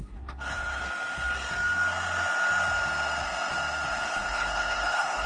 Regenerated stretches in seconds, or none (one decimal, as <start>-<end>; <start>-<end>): 0.0-0.8; 4.0-5.3